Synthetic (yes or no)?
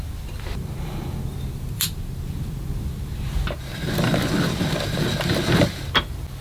no